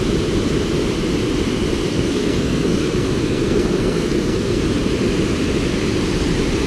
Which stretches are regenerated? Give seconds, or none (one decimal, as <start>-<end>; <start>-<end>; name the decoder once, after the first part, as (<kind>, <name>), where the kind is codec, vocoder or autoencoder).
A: 1.9-4.6 (codec, SNAC)